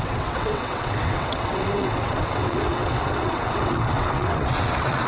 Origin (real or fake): fake